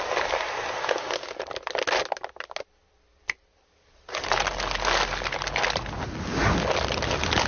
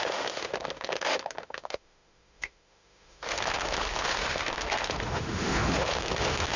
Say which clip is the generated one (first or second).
second